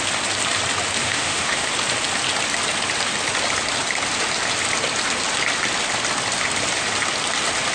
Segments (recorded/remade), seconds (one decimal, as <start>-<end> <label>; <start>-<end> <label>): 0.0-1.0 recorded; 1.0-1.7 remade; 1.7-7.7 recorded